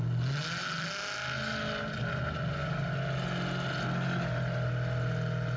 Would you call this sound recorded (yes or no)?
yes